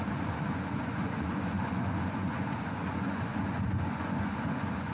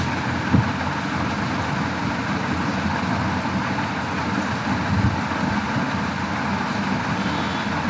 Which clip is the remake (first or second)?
first